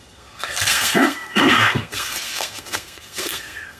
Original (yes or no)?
no